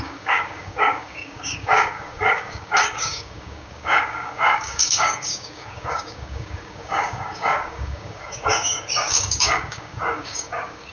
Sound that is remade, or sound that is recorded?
remade